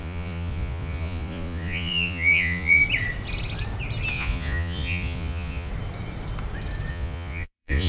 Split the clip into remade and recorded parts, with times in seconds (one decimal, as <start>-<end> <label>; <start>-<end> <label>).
0.0-2.8 remade; 2.8-4.1 recorded; 4.1-5.7 remade; 5.7-6.9 recorded; 6.9-7.9 remade